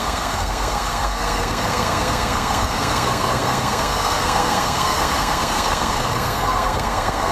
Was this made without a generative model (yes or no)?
no